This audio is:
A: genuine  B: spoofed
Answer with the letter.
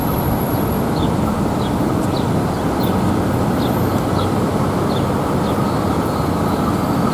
A